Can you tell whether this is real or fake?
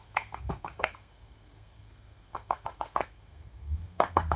fake